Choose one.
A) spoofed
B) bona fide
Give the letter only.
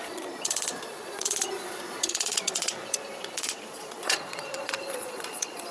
A